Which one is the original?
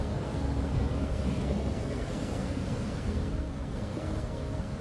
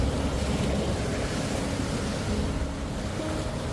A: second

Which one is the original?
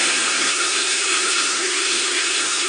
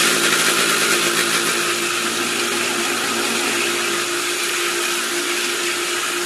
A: second